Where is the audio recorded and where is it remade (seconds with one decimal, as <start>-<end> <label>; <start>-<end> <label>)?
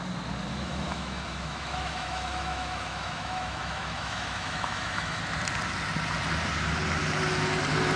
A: 0.0-0.5 recorded; 0.5-5.2 remade; 5.2-8.0 recorded